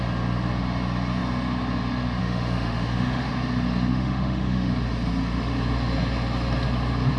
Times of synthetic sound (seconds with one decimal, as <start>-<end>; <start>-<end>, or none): 2.2-3.3; 3.9-4.7